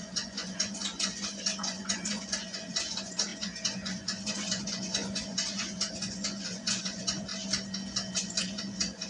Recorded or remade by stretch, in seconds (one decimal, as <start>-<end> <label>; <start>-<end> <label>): 0.0-7.3 remade; 7.3-8.1 recorded; 8.1-9.1 remade